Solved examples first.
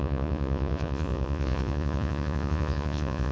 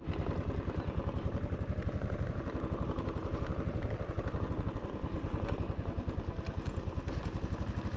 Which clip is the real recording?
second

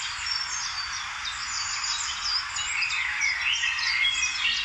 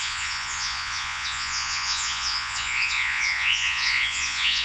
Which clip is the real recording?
first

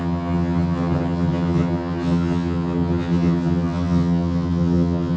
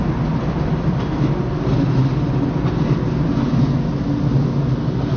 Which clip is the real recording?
second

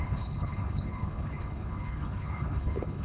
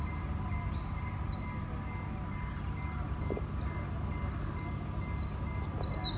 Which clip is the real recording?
second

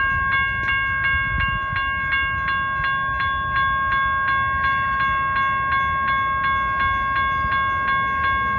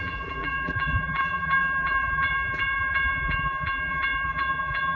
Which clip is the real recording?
first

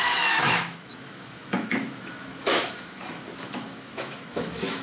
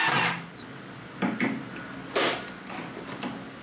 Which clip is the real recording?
second